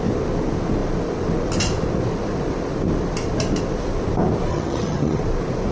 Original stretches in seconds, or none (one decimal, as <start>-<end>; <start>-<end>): 0.0-4.5; 5.2-5.7